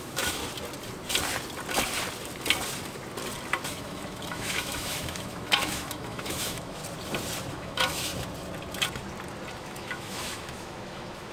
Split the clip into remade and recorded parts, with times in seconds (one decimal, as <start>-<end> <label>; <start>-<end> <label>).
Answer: 0.0-0.4 remade; 0.4-3.8 recorded; 3.8-6.8 remade; 6.8-7.5 recorded; 7.5-8.1 remade; 8.1-9.6 recorded; 9.6-11.3 remade